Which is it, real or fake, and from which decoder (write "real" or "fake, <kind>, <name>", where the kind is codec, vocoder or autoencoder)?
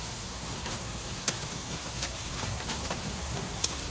fake, codec, SNAC